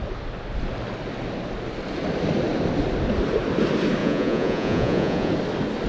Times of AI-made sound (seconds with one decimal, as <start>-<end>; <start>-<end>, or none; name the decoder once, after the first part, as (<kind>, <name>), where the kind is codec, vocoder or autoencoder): 4.0-5.3 (vocoder, Vocos)